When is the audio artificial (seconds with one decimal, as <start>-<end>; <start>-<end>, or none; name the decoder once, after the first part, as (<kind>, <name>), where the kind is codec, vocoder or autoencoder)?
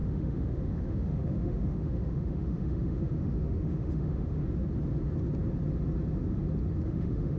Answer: 0.0-4.4 (autoencoder, DAC-VAE); 6.8-7.4